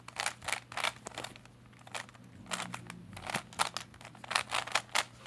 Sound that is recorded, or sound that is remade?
recorded